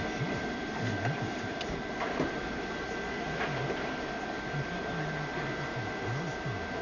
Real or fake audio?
real